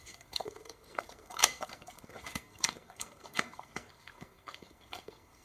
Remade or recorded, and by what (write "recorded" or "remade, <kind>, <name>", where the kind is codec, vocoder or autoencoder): remade, codec, SNAC